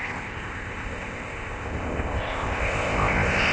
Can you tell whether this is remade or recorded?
remade